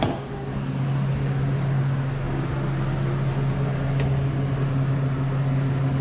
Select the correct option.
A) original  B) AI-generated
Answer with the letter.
A